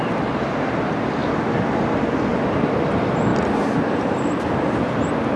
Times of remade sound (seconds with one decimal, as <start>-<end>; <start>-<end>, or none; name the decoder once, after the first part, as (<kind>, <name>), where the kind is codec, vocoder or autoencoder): 2.3-2.8 (vocoder, BigVGAN v2); 3.3-4.9